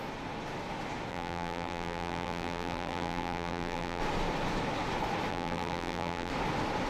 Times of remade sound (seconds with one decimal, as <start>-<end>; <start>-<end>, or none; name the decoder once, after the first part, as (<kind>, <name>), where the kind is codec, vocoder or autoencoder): 1.1-4.0 (vocoder, BigVGAN v2); 5.3-6.3